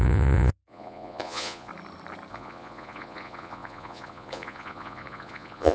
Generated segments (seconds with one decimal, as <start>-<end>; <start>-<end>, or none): 0.0-1.7; 2.3-5.7